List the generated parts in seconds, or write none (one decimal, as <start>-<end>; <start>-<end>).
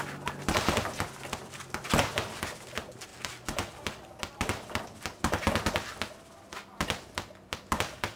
none